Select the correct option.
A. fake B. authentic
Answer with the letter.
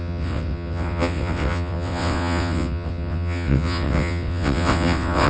A